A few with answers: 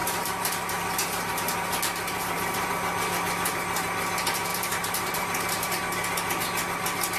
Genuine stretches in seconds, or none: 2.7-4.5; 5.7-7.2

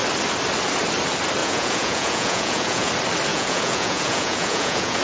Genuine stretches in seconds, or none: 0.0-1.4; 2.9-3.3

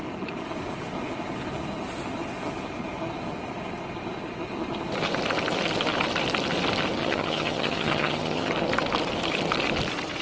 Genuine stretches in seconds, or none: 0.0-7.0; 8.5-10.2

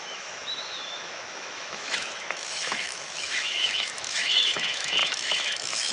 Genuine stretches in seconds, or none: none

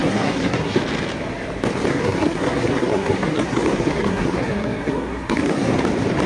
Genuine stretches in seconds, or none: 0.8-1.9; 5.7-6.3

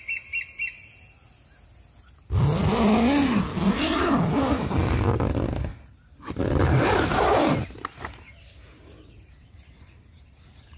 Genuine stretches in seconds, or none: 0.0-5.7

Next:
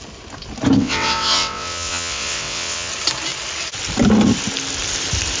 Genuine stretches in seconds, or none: 0.0-0.8; 2.9-5.4